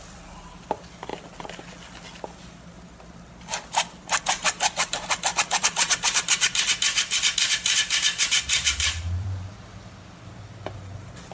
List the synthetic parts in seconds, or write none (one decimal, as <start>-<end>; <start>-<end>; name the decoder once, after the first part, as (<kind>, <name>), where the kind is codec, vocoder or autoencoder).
5.3-9.5 (vocoder, BigVGAN v2)